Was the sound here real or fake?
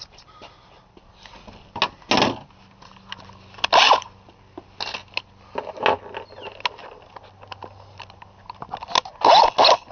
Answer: real